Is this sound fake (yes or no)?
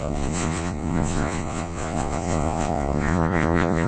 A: yes